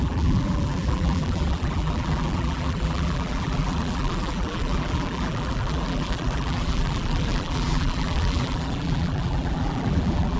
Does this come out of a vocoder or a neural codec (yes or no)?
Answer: yes